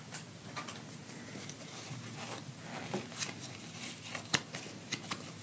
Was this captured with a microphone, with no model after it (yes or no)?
yes